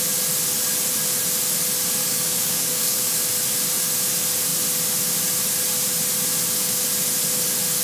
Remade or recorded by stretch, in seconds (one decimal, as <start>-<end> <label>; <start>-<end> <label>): 0.0-2.0 recorded; 2.0-3.2 remade; 3.2-7.8 recorded